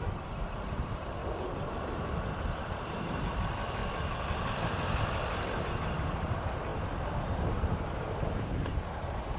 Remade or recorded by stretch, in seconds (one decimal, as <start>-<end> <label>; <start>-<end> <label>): 0.0-1.2 remade; 1.2-1.8 recorded; 1.8-3.8 remade; 3.8-6.3 recorded; 6.3-6.7 remade; 6.7-7.2 recorded; 7.2-9.4 remade